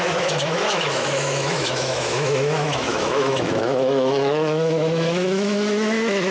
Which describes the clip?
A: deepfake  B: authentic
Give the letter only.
A